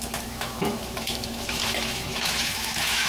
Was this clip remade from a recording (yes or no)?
yes